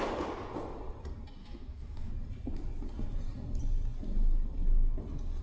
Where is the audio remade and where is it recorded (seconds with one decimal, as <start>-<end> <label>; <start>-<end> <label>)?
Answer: 0.0-1.4 recorded; 1.4-2.1 remade; 2.1-5.4 recorded

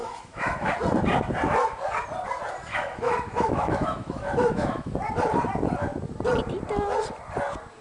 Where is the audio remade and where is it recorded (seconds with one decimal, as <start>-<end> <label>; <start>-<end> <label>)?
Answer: 0.0-0.7 remade; 0.7-2.7 recorded; 2.7-4.9 remade; 4.9-7.8 recorded